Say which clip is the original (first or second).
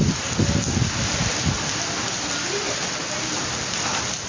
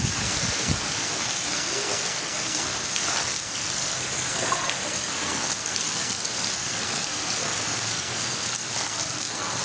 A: first